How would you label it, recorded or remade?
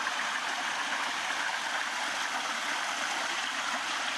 recorded